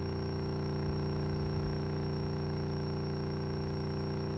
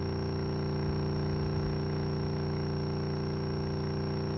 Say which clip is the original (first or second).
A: second